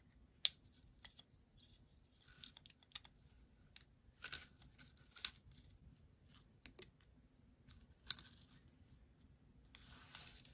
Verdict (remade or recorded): recorded